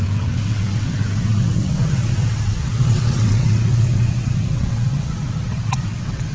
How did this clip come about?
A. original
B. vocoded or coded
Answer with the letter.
B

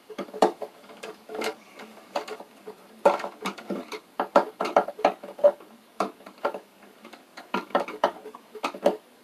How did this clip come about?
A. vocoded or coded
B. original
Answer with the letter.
A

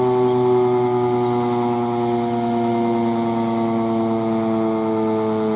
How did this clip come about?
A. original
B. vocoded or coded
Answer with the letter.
A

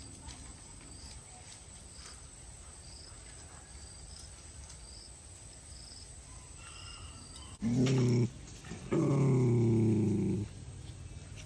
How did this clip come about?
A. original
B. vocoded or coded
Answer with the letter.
A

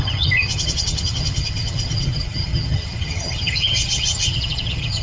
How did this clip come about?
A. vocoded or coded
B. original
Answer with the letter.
A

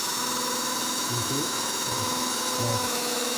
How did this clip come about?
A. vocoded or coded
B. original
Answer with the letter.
A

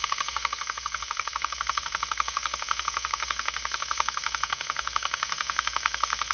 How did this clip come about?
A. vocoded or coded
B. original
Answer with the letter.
A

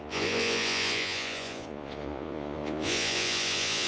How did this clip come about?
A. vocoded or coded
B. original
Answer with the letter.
A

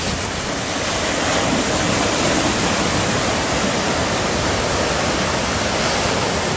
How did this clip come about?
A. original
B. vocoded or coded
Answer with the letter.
A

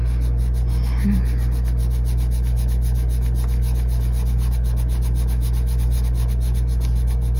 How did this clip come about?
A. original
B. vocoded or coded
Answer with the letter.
A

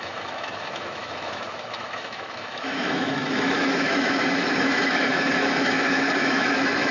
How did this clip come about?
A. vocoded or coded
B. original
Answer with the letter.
A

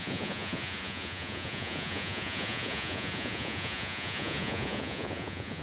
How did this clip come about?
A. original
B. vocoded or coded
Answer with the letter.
B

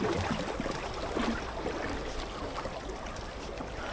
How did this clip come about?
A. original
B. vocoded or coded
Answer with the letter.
A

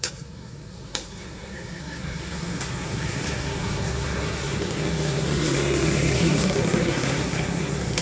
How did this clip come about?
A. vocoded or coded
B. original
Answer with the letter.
A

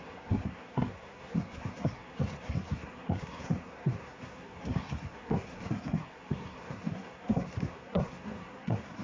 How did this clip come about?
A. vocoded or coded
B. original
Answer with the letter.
A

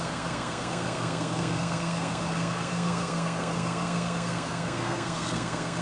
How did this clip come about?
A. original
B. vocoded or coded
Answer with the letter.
B